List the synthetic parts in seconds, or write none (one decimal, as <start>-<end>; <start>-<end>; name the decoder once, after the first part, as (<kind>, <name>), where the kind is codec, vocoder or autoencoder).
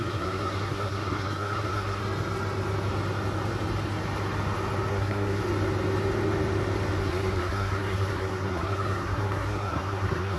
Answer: 0.0-2.0 (codec, SNAC); 4.9-5.4; 7.0-10.4